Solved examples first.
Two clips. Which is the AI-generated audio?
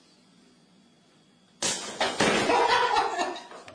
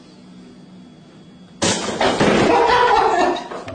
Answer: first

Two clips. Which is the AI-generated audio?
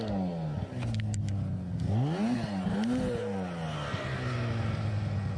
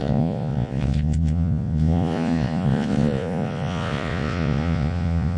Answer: second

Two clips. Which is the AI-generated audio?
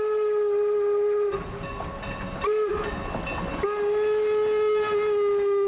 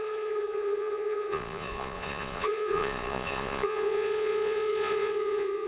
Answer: second